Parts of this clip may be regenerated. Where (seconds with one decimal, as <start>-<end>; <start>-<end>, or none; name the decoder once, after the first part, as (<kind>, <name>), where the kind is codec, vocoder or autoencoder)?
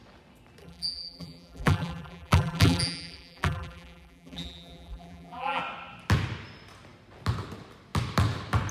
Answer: 0.6-5.6 (vocoder, BigVGAN v2)